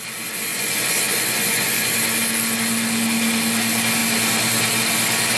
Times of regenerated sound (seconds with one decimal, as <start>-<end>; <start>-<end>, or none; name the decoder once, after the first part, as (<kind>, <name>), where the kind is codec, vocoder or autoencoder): 0.5-1.9 (vocoder, Vocos)